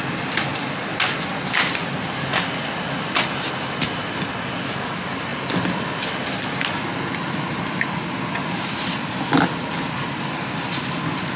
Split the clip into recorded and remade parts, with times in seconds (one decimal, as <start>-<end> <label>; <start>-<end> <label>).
0.0-11.4 recorded